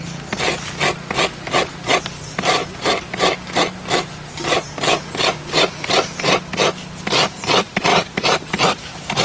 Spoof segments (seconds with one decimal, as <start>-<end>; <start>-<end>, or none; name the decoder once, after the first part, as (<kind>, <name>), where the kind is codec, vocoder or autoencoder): 7.9-9.2 (vocoder, BigVGAN v2)